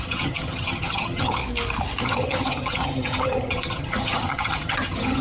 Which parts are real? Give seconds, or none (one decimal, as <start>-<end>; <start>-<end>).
1.4-2.0